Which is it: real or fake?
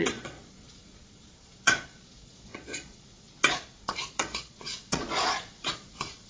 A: fake